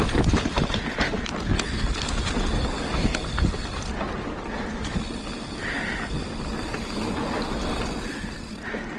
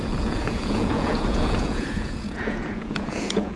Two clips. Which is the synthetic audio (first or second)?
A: second